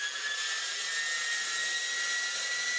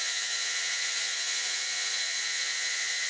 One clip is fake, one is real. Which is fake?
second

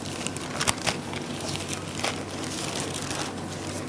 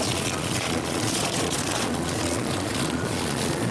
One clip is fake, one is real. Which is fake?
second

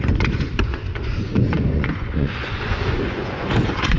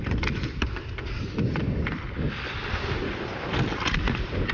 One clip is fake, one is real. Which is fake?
first